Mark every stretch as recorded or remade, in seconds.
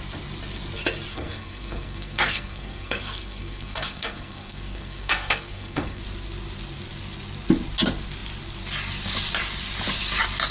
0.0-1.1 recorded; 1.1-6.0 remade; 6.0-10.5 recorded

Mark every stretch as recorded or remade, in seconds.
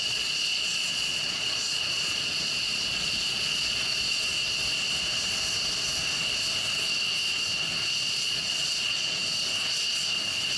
0.0-4.3 remade; 4.3-8.1 recorded; 8.1-9.2 remade; 9.2-10.6 recorded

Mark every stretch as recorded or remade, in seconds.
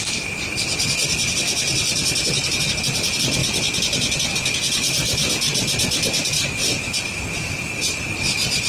0.0-3.4 remade; 3.4-5.3 recorded; 5.3-8.7 remade